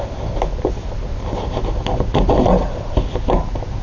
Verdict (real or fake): real